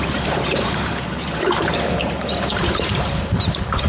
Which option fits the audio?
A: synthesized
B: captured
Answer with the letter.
A